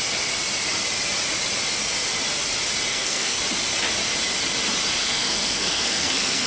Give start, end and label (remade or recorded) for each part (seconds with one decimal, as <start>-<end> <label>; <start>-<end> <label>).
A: 0.0-2.9 recorded; 2.9-3.4 remade; 3.4-5.0 recorded; 5.0-6.5 remade